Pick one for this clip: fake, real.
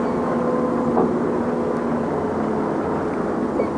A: real